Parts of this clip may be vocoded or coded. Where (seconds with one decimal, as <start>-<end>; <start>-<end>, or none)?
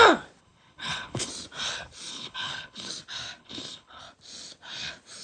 0.4-1.3; 2.1-2.9; 3.4-4.0